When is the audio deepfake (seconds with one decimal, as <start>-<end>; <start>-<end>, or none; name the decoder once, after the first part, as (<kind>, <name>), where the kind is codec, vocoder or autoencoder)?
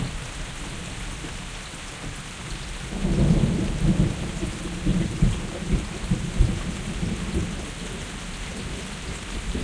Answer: 4.9-6.5 (vocoder, BigVGAN v2)